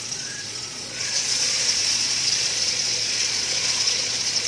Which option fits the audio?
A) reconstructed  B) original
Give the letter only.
A